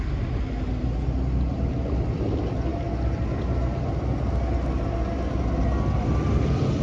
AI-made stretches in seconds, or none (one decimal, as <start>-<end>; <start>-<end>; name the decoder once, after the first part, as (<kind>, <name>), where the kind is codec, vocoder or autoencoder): none